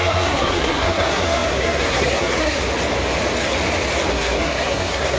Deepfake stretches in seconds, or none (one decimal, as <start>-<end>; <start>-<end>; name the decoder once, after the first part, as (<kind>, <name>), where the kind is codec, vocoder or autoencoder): 0.0-2.7 (codec, SNAC); 4.1-5.2